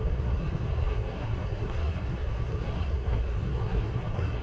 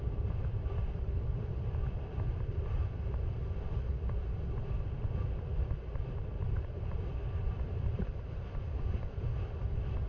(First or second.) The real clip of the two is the second